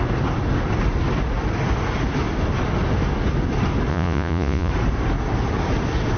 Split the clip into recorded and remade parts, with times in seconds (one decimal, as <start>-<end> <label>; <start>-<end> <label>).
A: 0.0-3.9 recorded; 3.9-4.7 remade; 4.7-6.2 recorded